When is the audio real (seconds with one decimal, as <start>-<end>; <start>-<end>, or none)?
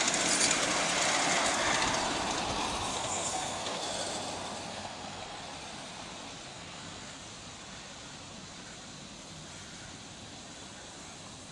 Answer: 0.0-2.9; 3.8-4.7; 5.4-6.5; 7.2-11.5